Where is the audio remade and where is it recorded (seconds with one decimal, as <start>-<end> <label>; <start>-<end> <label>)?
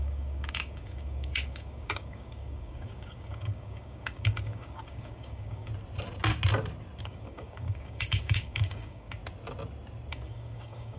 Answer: 0.0-5.7 remade; 5.7-7.0 recorded; 7.0-9.2 remade; 9.2-10.1 recorded; 10.1-11.0 remade